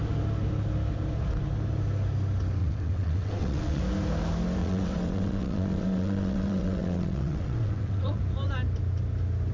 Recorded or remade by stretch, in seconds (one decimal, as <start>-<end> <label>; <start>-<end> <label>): 0.0-2.6 recorded; 2.6-3.8 remade; 3.8-4.6 recorded; 4.6-8.2 remade; 8.2-9.5 recorded